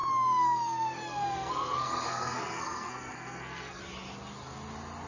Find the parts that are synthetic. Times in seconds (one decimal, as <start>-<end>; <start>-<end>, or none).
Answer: 0.0-3.8